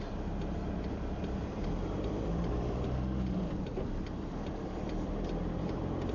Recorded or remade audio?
remade